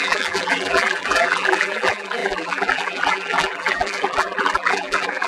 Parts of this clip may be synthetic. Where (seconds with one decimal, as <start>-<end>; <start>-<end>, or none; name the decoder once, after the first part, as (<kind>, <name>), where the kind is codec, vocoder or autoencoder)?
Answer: 0.0-5.3 (vocoder, BigVGAN v2)